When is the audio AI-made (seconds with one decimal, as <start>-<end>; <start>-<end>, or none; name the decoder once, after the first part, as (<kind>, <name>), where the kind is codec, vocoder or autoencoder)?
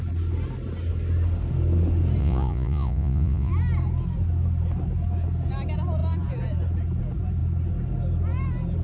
2.2-3.5 (vocoder, Vocos)